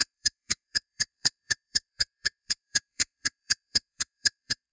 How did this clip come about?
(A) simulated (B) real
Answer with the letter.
A